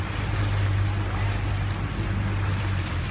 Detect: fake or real real